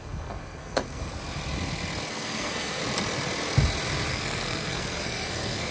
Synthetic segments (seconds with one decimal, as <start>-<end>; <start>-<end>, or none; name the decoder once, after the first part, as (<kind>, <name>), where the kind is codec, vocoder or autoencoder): 0.0-1.1 (codec, SNAC); 2.1-2.8; 4.1-5.7